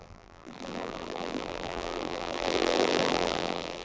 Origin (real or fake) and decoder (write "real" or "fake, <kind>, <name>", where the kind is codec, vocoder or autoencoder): fake, vocoder, BigVGAN v2